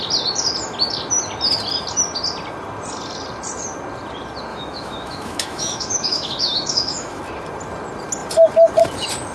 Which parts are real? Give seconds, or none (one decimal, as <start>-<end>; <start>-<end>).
0.0-4.5; 7.2-9.3